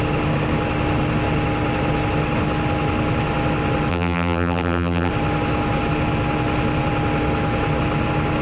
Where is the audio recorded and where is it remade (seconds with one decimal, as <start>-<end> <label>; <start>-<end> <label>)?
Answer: 0.0-3.9 recorded; 3.9-5.1 remade; 5.1-8.4 recorded